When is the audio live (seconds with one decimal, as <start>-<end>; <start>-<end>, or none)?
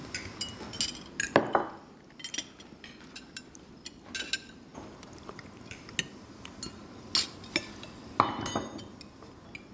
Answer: 0.0-4.7; 5.4-9.7